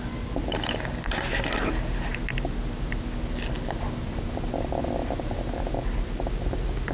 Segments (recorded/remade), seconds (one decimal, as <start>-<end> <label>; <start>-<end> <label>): 0.0-6.9 recorded

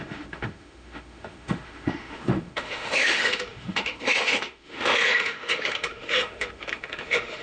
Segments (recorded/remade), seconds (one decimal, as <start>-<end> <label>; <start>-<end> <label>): 0.0-7.4 remade

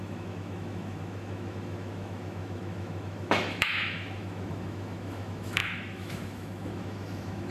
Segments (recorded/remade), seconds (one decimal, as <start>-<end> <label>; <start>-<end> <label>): 0.0-7.5 remade

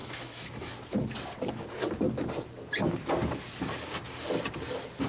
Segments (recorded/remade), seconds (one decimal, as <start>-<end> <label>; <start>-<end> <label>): 0.0-0.7 remade; 0.7-5.1 recorded